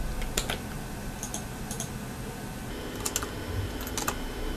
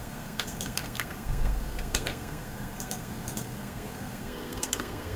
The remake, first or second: second